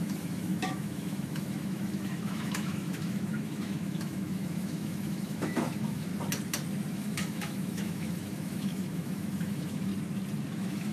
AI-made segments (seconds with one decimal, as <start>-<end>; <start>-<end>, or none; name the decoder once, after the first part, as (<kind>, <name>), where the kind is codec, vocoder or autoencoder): 0.0-6.1 (autoencoder, DAC-VAE); 6.9-9.9; 10.5-10.9